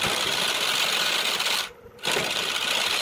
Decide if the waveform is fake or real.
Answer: real